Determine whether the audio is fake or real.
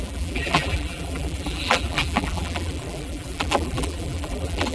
fake